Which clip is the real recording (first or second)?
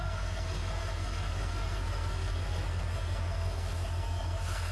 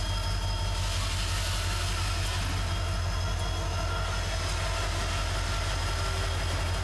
second